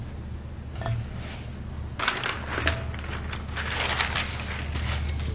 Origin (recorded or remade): recorded